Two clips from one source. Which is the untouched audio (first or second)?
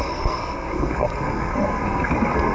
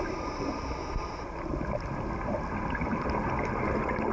second